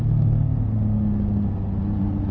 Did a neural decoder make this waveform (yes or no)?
no